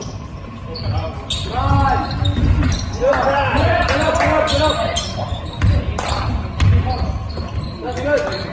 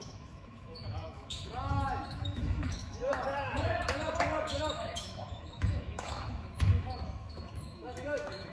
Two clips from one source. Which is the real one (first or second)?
first